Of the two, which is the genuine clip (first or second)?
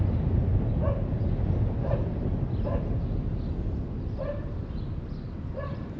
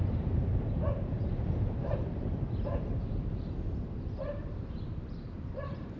first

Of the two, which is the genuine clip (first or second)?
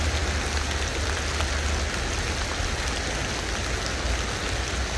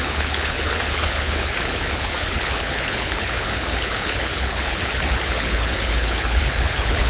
first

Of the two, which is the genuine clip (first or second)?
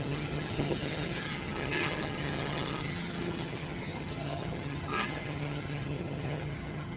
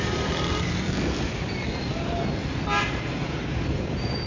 second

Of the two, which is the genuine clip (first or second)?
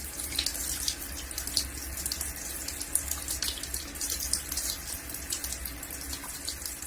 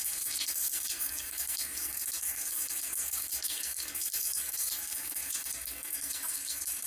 first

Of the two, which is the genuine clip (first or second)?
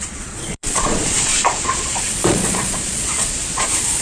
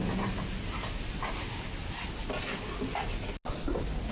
second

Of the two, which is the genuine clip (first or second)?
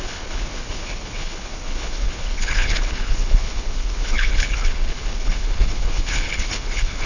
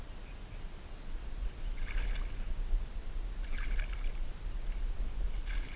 second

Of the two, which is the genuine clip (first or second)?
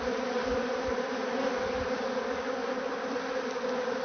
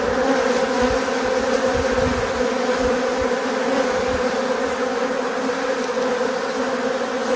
second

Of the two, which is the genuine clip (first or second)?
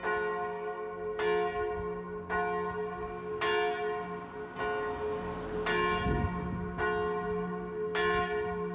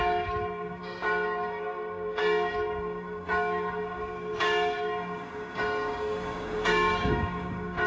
first